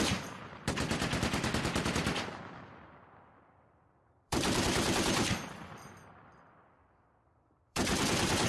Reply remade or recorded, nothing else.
remade